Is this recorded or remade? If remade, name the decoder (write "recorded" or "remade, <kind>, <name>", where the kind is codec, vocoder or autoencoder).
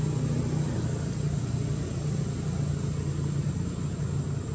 recorded